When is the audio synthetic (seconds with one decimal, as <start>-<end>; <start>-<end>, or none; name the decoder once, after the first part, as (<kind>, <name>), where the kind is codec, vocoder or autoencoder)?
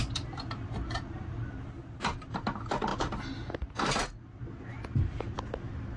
none